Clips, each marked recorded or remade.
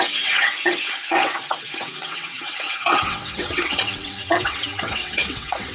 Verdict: remade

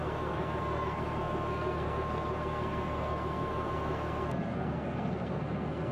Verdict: remade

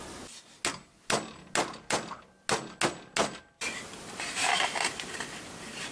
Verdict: recorded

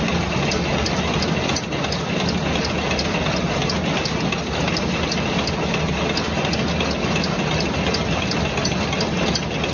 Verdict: recorded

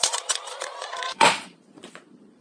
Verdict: remade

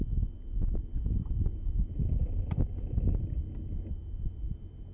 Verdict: recorded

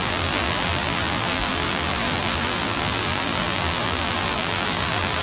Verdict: remade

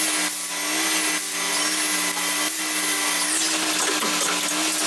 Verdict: recorded